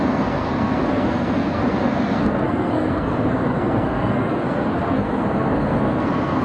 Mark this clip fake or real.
fake